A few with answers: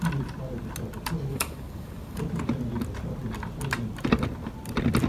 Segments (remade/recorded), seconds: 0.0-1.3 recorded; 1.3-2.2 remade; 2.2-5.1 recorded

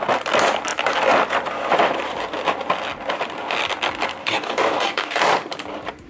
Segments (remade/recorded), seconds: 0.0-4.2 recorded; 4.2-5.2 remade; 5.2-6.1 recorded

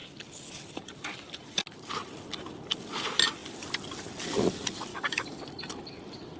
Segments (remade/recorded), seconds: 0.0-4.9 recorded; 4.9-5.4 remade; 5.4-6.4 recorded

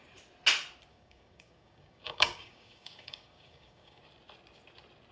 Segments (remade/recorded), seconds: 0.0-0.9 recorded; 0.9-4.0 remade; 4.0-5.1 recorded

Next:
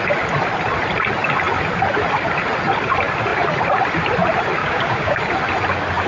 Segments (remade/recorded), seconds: 0.0-4.6 recorded; 4.6-5.2 remade; 5.2-6.1 recorded

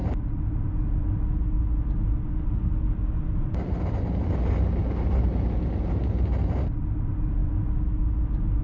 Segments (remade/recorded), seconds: 0.0-8.6 recorded

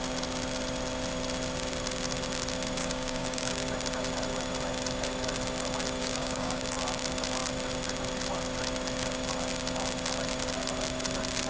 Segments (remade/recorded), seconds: 0.0-2.8 recorded; 2.8-3.5 remade; 3.5-6.0 recorded; 6.0-6.6 remade; 6.6-11.5 recorded

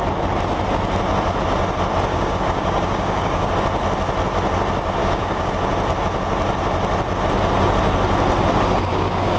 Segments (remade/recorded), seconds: 0.0-2.1 recorded; 2.1-3.5 remade; 3.5-5.0 recorded; 5.0-5.5 remade; 5.5-8.9 recorded; 8.9-9.4 remade